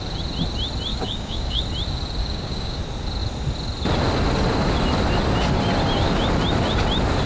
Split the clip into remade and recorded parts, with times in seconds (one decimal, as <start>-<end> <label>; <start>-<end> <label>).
0.0-0.9 recorded; 0.9-1.6 remade; 1.6-2.2 recorded; 2.2-2.8 remade; 2.8-7.3 recorded

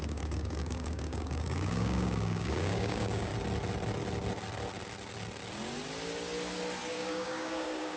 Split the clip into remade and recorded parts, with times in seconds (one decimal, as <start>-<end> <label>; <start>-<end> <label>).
0.0-3.3 remade; 3.3-6.9 recorded; 6.9-8.0 remade

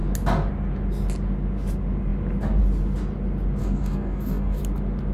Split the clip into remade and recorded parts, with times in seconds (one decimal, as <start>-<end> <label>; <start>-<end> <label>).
0.0-3.6 recorded; 3.6-4.6 remade; 4.6-5.1 recorded

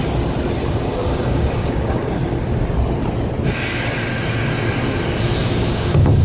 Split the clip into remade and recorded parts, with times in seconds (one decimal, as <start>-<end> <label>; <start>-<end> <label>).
0.0-0.7 recorded; 0.7-2.2 remade; 2.2-5.7 recorded; 5.7-6.2 remade

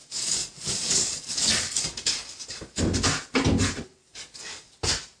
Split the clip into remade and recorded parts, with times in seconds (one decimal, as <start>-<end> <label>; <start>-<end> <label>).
0.0-2.8 remade; 2.8-4.0 recorded; 4.0-4.7 remade; 4.7-5.2 recorded

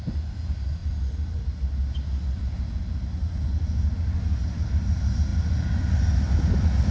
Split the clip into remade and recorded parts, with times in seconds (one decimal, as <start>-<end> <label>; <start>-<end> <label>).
0.0-6.9 recorded

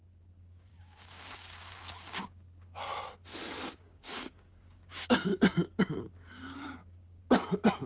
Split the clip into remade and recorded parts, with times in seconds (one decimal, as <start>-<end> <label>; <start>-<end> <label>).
0.0-2.9 remade; 2.9-3.7 recorded; 3.7-5.3 remade; 5.3-5.8 recorded; 5.8-7.2 remade; 7.2-7.9 recorded